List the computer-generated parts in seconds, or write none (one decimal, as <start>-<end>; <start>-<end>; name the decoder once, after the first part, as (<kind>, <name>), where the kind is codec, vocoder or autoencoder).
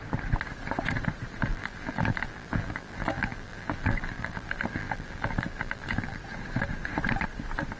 1.5-6.2 (vocoder, BigVGAN v2)